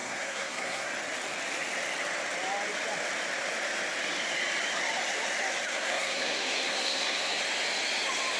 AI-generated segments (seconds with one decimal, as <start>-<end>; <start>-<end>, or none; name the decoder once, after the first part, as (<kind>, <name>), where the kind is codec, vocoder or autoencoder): 0.0-0.9 (codec, SNAC); 5.7-7.4